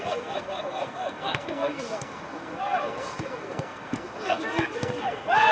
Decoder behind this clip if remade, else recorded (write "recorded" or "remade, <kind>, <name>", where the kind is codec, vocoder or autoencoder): remade, codec, SNAC